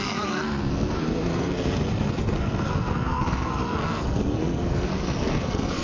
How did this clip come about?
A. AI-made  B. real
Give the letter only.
A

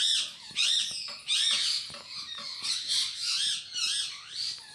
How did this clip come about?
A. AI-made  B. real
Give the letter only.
B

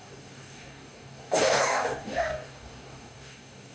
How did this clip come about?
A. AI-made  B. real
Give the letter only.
A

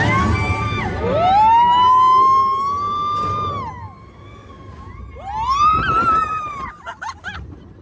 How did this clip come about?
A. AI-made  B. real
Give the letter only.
B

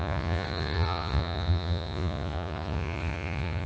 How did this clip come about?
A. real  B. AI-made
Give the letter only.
B